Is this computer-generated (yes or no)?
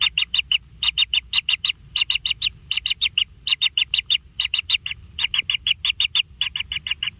no